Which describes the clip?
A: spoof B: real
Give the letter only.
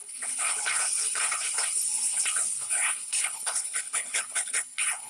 A